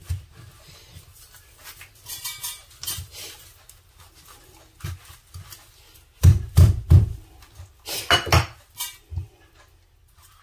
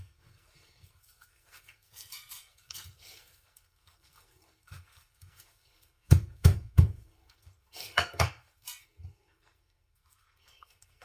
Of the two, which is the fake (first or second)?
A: second